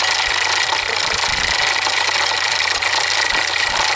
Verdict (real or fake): real